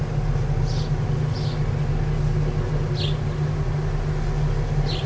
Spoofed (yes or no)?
no